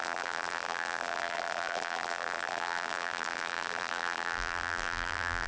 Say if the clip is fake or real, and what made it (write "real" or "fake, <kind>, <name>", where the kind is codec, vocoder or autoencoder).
fake, vocoder, BigVGAN v2